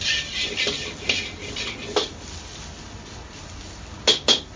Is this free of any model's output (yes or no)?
yes